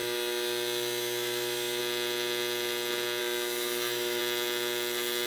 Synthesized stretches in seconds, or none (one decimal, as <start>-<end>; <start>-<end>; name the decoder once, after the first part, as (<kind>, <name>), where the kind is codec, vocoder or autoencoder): 0.0-1.8 (autoencoder, DAC-VAE); 3.2-4.2